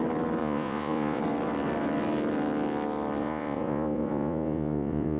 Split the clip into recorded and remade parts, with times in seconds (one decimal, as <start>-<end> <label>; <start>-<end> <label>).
0.0-0.4 recorded; 0.4-1.2 remade; 1.2-3.2 recorded; 3.2-5.2 remade

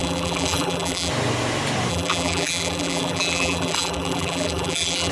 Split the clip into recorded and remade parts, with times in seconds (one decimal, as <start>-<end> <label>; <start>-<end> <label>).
0.0-1.1 remade; 1.1-1.9 recorded; 1.9-5.1 remade

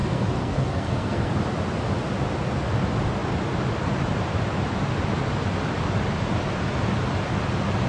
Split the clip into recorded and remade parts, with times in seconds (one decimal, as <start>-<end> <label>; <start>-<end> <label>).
0.0-1.3 remade; 1.3-7.9 recorded

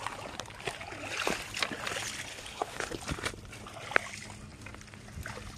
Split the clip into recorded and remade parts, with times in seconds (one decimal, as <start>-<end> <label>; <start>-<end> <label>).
0.0-2.3 recorded; 2.3-3.0 remade; 3.0-5.6 recorded

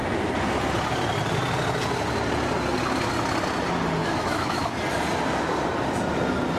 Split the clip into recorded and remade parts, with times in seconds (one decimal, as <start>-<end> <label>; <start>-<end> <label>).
0.0-4.0 recorded; 4.0-4.7 remade; 4.7-6.6 recorded

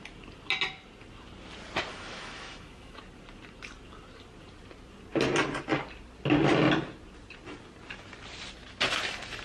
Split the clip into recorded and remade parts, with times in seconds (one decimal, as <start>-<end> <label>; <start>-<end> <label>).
0.0-1.9 recorded; 1.9-3.0 remade; 3.0-9.4 recorded

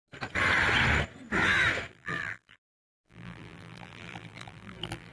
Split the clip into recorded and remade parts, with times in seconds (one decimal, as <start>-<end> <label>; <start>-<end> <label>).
0.0-1.9 recorded; 1.9-5.1 remade